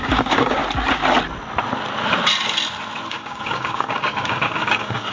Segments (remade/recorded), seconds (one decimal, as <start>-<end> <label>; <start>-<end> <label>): 0.0-0.6 remade; 0.6-3.1 recorded; 3.1-5.1 remade